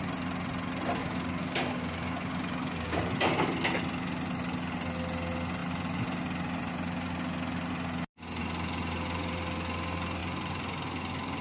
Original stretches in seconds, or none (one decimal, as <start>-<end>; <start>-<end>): 0.0-1.0; 3.0-11.4